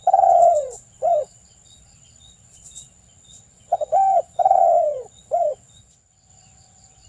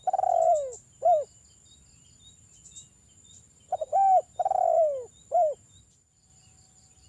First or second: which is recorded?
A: second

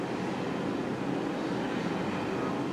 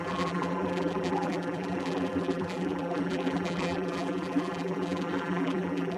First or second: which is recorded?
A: first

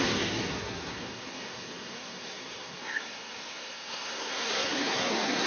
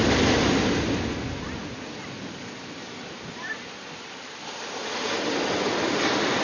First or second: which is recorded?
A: second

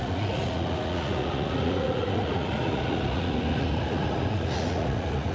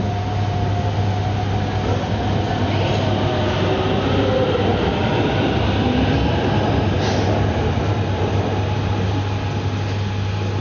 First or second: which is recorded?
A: second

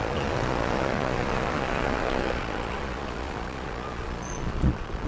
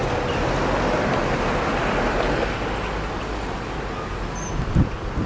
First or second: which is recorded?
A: second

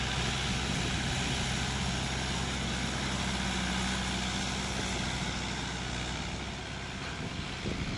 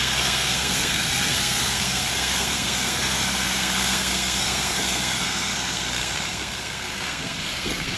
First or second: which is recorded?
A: first